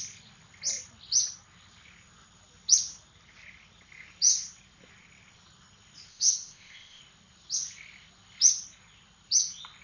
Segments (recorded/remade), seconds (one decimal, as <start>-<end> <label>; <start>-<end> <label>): 0.0-6.1 recorded; 6.1-7.0 remade; 7.0-9.8 recorded